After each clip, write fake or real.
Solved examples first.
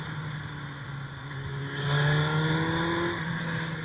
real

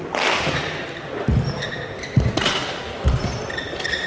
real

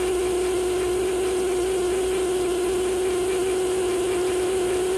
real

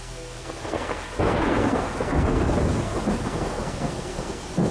fake